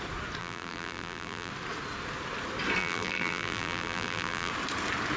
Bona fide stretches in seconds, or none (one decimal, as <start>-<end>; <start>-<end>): 0.0-0.4; 1.5-2.8; 4.5-5.2